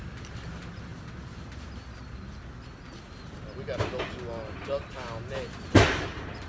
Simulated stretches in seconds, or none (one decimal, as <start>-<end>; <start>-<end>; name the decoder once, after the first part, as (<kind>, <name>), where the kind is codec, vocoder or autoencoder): none